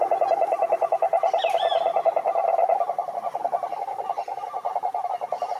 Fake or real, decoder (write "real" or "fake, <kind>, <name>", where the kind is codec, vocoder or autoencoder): real